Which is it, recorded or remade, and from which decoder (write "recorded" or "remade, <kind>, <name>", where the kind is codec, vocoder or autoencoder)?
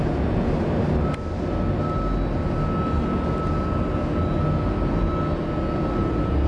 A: recorded